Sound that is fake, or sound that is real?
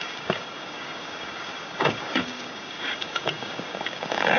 fake